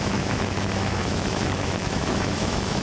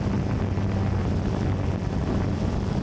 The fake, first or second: first